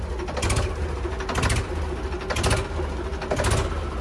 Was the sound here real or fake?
real